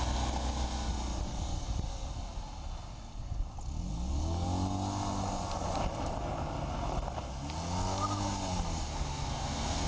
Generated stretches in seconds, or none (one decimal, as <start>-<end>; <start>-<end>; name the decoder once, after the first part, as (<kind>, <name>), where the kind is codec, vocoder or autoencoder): 8.9-9.9 (codec, SNAC)

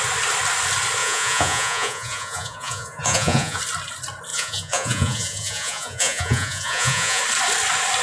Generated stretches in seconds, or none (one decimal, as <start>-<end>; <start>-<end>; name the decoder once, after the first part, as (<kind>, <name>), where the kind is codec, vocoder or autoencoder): 1.0-3.6 (vocoder, Vocos); 4.3-7.2